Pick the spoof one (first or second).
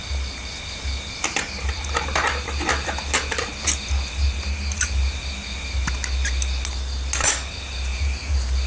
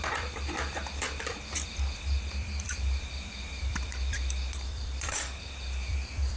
second